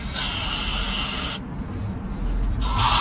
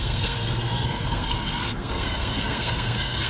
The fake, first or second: second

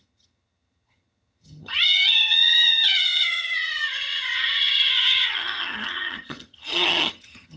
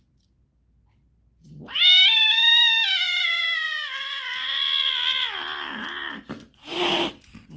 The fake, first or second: first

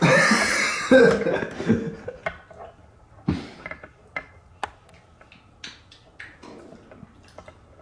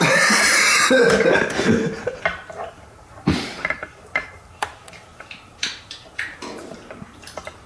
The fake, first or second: second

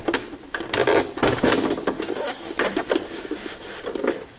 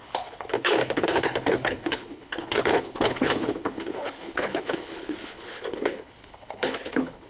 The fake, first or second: second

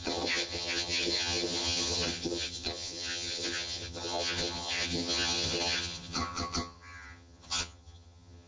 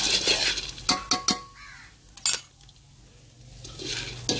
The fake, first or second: first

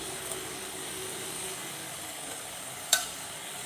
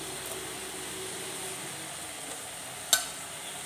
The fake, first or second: first